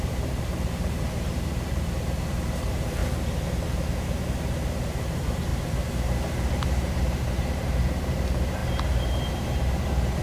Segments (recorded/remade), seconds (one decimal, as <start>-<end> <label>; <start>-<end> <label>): 0.0-3.0 remade; 3.0-5.0 recorded; 5.0-5.5 remade; 5.5-6.5 recorded; 6.5-10.2 remade